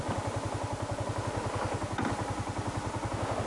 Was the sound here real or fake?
real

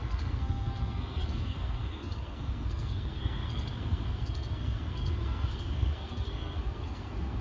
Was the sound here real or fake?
fake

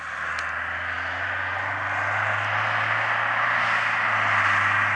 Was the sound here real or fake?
real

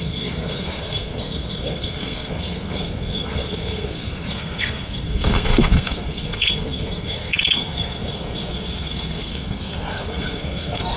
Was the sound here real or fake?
fake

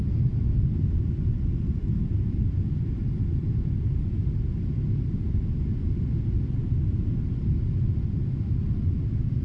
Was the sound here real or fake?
real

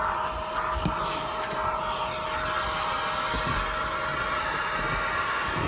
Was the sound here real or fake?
real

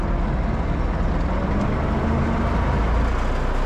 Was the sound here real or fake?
real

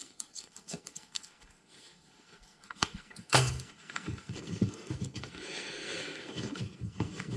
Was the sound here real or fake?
fake